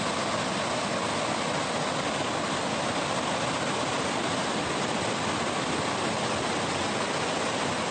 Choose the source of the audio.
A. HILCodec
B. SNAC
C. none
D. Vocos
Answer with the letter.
C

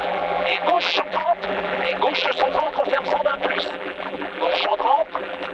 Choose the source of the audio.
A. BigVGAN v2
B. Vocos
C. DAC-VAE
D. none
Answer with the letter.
A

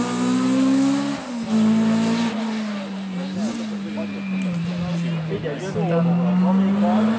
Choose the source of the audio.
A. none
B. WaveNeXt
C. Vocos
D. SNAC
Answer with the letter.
A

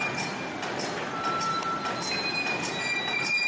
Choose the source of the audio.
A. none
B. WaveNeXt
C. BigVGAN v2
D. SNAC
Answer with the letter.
A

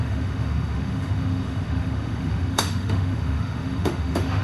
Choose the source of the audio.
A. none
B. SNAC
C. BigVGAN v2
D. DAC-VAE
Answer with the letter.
D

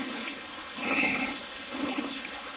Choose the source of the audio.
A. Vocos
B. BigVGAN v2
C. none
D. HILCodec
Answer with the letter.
D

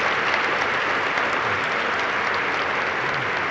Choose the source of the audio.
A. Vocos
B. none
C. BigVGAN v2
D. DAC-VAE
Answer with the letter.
B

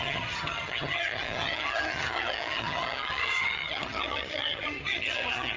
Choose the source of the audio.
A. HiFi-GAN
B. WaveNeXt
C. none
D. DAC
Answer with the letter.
A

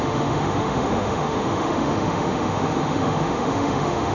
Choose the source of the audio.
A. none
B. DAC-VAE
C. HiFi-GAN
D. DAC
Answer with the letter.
B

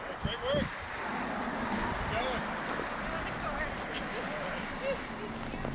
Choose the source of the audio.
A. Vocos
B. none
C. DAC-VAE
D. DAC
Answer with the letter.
B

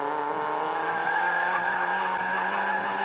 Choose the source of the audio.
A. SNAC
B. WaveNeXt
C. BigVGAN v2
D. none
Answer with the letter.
D